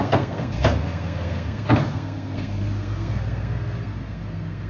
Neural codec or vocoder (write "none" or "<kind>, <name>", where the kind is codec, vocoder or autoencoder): codec, SNAC